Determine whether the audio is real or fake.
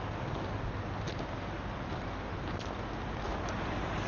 real